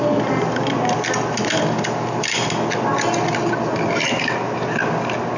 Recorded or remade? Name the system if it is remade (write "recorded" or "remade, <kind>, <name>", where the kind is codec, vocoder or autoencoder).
recorded